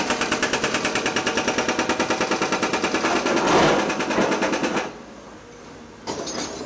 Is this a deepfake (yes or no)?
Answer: no